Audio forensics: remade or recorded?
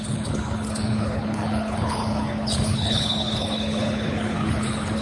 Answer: remade